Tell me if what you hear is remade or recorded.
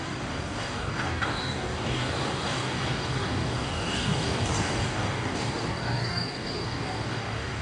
remade